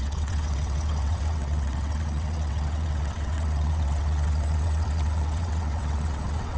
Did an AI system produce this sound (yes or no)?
yes